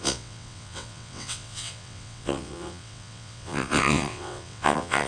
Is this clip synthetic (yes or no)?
yes